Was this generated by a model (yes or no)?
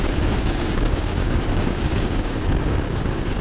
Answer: yes